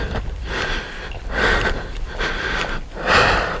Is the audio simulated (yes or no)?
no